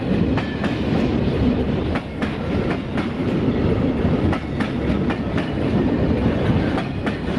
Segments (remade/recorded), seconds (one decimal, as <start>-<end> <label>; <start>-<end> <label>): 0.0-3.2 recorded; 3.2-4.3 remade; 4.3-7.4 recorded